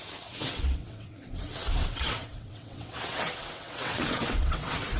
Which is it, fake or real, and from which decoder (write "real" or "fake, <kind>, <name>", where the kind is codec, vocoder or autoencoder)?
fake, vocoder, WaveNeXt